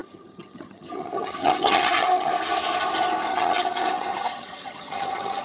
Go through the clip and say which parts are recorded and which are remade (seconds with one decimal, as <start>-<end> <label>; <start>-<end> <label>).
0.0-2.3 remade; 2.3-3.3 recorded; 3.3-5.4 remade